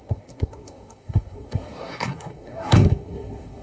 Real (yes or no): no